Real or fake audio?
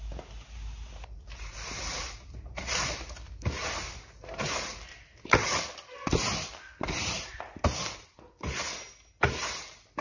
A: real